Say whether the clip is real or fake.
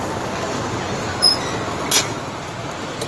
real